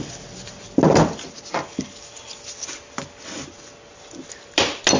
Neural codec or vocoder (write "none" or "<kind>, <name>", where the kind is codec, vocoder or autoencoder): none